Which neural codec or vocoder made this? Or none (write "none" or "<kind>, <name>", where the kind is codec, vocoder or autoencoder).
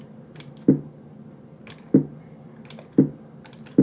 none